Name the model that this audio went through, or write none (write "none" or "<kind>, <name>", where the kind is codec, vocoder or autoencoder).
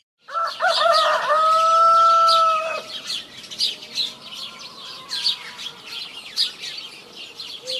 none